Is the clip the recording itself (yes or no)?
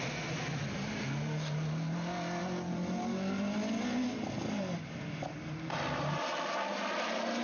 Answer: yes